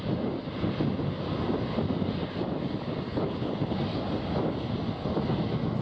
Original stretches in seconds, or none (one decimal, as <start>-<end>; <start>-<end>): 0.0-3.1; 3.8-5.8